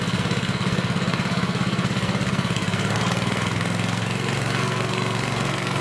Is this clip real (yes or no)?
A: no